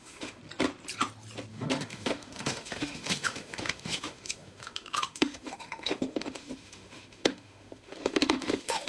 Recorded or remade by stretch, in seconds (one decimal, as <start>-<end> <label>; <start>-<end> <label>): 0.0-0.4 remade; 0.4-1.5 recorded; 1.5-8.9 remade